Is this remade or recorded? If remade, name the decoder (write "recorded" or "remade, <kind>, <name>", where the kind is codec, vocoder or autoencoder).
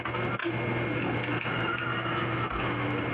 recorded